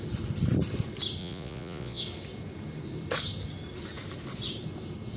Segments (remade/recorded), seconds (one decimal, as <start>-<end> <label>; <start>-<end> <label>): 0.0-1.2 recorded; 1.2-2.0 remade; 2.0-5.2 recorded